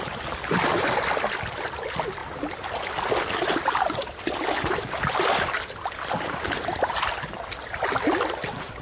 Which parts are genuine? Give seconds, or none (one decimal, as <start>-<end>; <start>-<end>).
0.0-8.8